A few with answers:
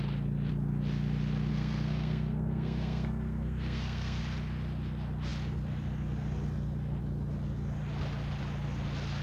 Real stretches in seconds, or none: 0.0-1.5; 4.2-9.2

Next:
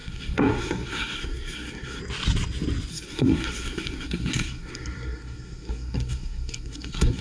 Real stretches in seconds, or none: 2.0-2.9

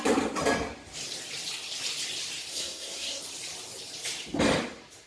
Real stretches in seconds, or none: 0.0-2.5; 3.2-5.1

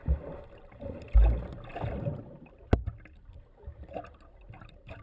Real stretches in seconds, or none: 0.0-5.0